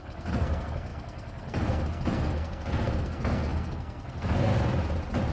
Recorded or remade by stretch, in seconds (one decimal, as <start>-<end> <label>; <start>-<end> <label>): 0.0-4.5 remade; 4.5-5.3 recorded